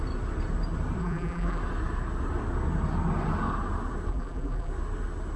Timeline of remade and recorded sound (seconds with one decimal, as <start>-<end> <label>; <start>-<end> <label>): 0.0-1.0 recorded; 1.0-1.6 remade; 1.6-4.1 recorded; 4.1-4.7 remade; 4.7-5.4 recorded